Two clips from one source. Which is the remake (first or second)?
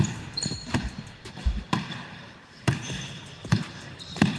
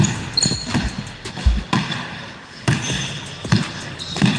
first